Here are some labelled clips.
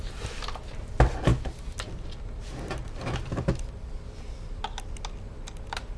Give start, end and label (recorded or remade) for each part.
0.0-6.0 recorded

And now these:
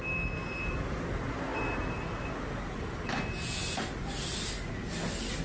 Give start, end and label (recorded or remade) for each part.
0.0-5.4 recorded

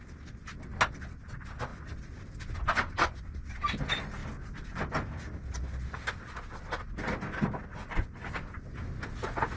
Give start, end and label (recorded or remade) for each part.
0.0-9.6 recorded

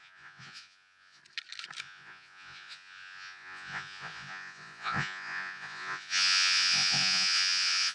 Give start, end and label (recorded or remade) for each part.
0.0-1.2 remade; 1.2-1.8 recorded; 1.8-7.9 remade

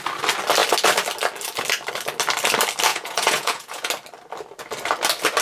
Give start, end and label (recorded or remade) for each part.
0.0-2.9 recorded; 2.9-3.9 remade; 3.9-5.4 recorded

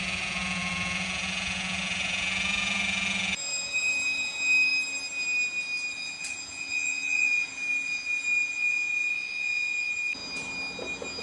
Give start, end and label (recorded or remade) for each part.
0.0-4.7 remade; 4.7-5.9 recorded; 5.9-10.2 remade; 10.2-11.2 recorded

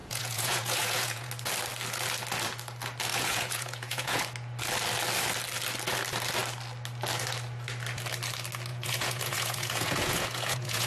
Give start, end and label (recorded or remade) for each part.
0.0-1.3 remade; 1.3-3.1 recorded; 3.1-4.2 remade; 4.2-8.7 recorded; 8.7-10.9 remade